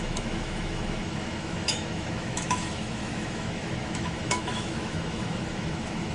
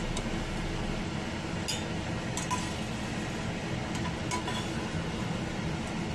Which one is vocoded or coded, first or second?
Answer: first